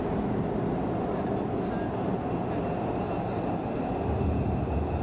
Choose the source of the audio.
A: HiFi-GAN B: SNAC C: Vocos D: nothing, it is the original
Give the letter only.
D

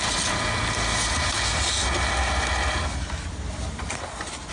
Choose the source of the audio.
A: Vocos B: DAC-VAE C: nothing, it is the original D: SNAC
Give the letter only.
C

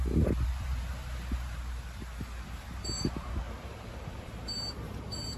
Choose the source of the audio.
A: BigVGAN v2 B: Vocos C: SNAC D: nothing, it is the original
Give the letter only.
A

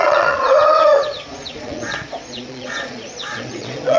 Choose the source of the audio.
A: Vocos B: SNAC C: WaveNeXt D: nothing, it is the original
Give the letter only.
A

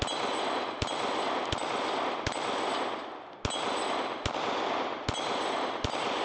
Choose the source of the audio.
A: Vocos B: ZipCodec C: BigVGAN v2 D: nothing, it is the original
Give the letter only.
D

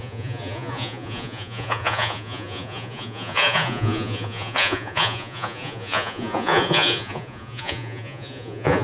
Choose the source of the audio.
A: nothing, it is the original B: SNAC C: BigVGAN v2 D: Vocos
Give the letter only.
D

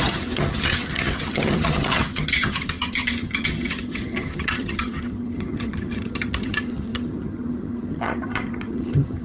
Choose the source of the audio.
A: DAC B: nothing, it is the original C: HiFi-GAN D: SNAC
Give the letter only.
C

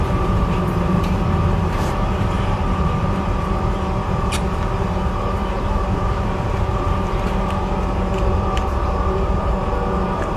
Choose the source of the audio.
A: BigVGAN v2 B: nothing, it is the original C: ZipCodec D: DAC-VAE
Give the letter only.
A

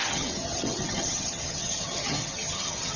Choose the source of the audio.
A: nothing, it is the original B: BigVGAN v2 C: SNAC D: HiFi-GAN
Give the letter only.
D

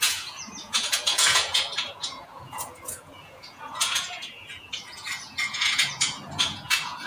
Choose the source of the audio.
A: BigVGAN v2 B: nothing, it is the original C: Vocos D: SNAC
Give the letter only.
C